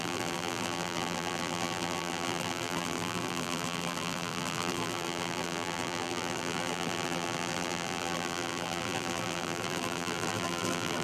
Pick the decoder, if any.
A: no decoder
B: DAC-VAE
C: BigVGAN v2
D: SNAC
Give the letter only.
C